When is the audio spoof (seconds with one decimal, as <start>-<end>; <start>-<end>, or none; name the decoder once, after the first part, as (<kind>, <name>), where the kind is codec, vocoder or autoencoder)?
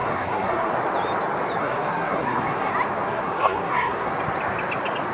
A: 0.0-0.7 (codec, SNAC); 1.6-2.7; 3.1-4.1